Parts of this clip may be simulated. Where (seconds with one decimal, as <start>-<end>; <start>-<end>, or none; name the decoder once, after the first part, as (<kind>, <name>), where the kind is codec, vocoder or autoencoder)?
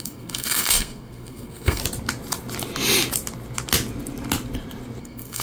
0.0-1.8 (codec, SNAC); 5.0-5.4